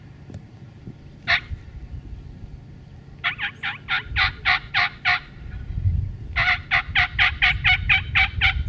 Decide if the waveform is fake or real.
real